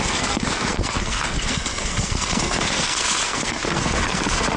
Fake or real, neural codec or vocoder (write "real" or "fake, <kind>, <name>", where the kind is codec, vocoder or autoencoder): fake, codec, SNAC